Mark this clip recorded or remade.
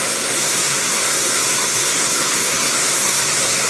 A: remade